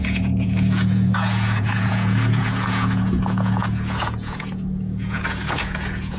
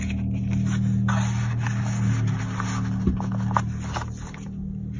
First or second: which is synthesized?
first